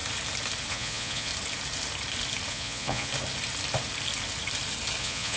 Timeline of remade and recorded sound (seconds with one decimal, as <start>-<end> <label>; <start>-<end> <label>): 0.0-0.7 recorded; 0.7-1.3 remade; 1.3-2.5 recorded; 2.5-3.1 remade; 3.1-5.0 recorded; 5.0-5.4 remade